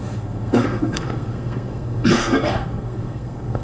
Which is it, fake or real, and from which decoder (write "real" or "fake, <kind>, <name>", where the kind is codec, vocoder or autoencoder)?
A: fake, codec, SNAC